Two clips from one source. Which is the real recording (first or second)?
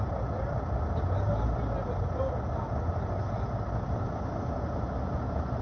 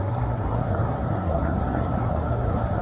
first